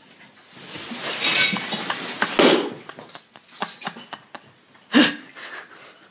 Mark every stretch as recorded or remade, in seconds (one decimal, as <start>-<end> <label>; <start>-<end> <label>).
0.0-6.1 recorded